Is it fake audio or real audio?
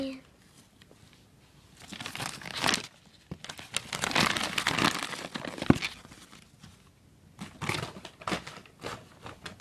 real